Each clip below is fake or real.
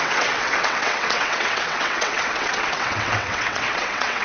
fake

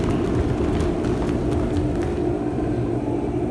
real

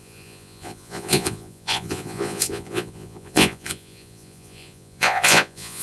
fake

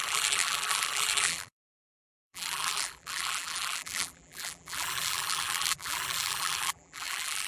fake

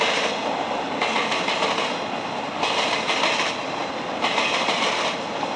real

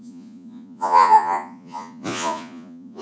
fake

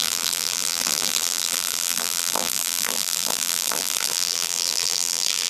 fake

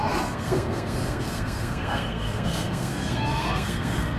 fake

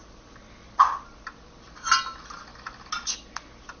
real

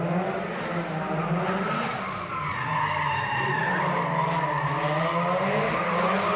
real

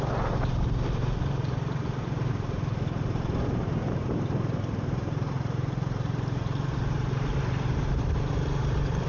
fake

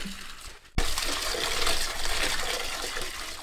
real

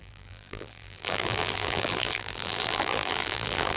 fake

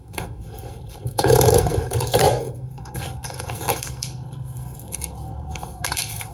fake